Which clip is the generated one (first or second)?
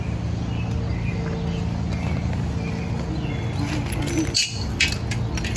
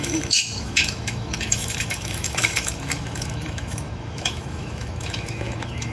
second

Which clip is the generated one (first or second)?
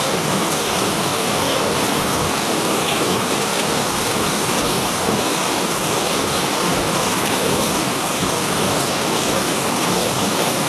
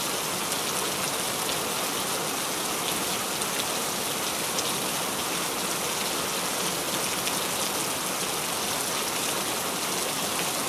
first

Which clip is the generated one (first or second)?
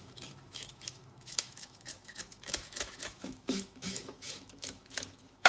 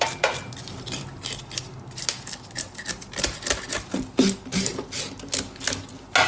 first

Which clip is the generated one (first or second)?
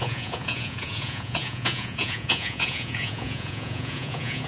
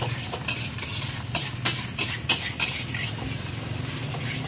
first